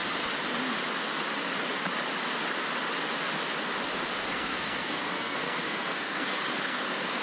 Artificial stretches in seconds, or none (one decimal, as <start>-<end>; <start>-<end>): 4.3-7.2